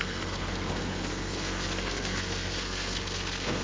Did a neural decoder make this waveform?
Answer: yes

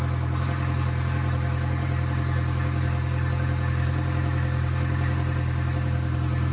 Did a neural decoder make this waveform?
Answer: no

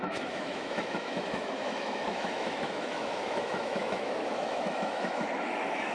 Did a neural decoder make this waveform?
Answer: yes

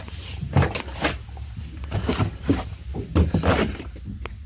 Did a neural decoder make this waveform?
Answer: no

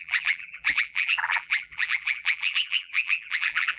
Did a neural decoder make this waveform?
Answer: yes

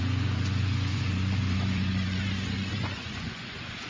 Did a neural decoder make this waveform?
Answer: yes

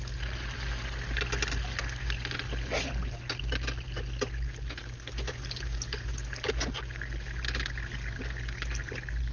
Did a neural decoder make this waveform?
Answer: no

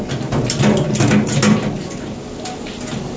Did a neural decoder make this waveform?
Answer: no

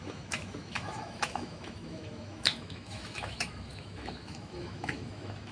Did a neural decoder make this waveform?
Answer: yes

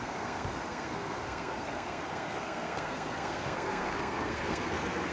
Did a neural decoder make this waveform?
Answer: yes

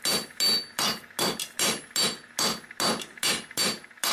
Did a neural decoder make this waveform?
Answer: no